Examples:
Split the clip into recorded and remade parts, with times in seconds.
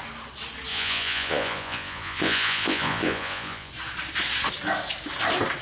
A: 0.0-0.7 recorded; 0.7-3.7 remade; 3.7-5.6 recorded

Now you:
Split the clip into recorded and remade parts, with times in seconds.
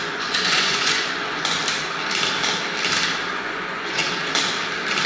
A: 0.0-1.6 remade; 1.6-3.3 recorded; 3.3-4.0 remade; 4.0-5.1 recorded